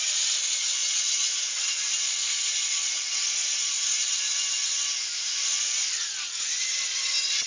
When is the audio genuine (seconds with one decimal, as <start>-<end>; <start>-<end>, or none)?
0.8-1.5